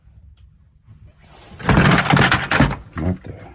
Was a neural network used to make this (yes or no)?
no